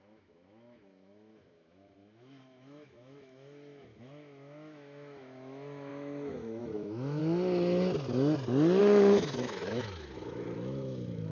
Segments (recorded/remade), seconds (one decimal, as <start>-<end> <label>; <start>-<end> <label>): 0.0-7.2 remade; 7.2-8.8 recorded; 8.8-11.3 remade